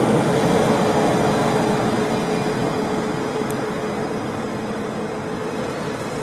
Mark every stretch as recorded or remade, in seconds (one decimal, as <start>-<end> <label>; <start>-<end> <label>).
0.0-6.2 recorded

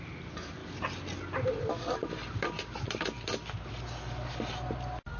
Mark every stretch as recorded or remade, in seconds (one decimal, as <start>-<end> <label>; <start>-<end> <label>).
0.0-5.2 recorded

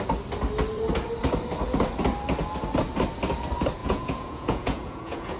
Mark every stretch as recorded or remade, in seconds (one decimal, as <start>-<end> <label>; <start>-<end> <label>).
0.0-3.8 recorded; 3.8-5.4 remade

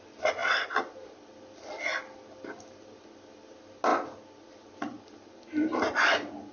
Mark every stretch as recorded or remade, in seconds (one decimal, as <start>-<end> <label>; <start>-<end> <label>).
0.0-6.5 recorded

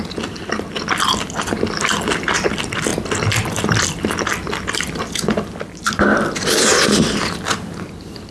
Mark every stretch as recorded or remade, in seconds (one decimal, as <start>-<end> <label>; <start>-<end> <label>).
0.0-8.3 recorded

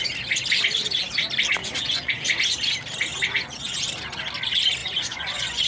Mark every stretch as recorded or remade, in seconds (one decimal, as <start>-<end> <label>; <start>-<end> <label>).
0.0-1.6 recorded; 1.6-2.4 remade; 2.4-3.1 recorded; 3.1-3.8 remade; 3.8-4.8 recorded; 4.8-5.7 remade

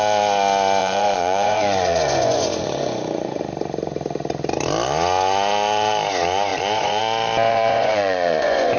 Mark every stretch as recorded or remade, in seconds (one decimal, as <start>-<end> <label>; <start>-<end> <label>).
0.0-0.8 recorded; 0.8-3.4 remade; 3.4-6.5 recorded; 6.5-7.0 remade; 7.0-7.5 recorded; 7.5-8.8 remade

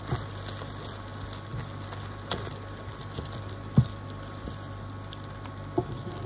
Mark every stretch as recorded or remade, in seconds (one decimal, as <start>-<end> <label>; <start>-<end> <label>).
0.0-6.3 recorded